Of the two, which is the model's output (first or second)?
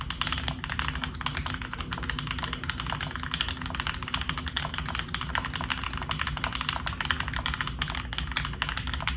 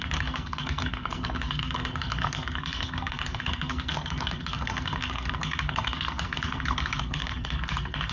second